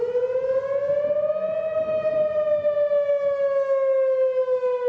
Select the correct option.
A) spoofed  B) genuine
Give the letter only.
B